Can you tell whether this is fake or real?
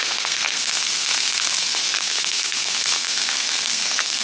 fake